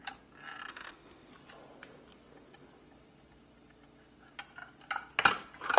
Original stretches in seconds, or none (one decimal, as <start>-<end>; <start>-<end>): 0.0-0.7; 1.3-5.8